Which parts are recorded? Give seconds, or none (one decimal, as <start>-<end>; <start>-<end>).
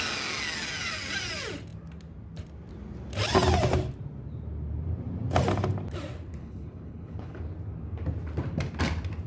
0.0-6.4; 7.4-9.3